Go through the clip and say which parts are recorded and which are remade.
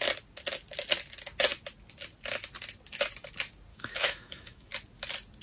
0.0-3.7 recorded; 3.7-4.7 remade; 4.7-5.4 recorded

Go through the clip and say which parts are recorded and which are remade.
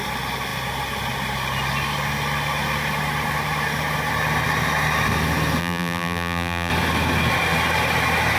0.0-5.6 recorded; 5.6-6.7 remade; 6.7-8.4 recorded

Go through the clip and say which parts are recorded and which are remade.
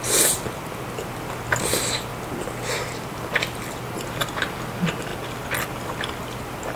0.0-6.8 recorded